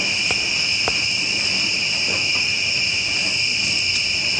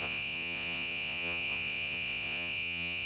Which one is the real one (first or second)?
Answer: first